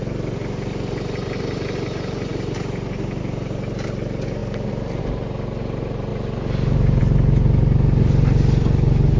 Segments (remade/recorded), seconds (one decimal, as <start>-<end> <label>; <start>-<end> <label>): 0.0-2.3 recorded; 2.3-3.2 remade; 3.2-9.2 recorded